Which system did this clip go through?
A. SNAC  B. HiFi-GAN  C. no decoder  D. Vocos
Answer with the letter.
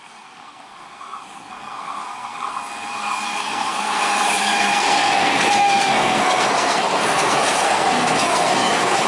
A